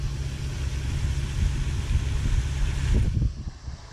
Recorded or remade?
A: recorded